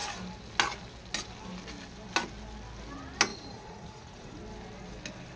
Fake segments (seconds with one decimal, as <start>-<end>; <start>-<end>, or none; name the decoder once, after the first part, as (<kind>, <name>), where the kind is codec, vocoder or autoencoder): 3.3-4.4 (vocoder, Vocos)